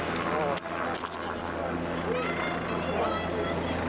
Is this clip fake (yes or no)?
no